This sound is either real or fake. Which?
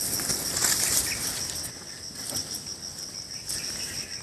real